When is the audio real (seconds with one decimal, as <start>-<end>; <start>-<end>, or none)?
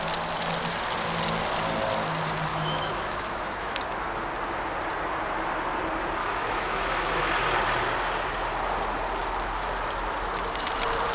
0.0-2.5; 3.8-6.2; 7.3-11.1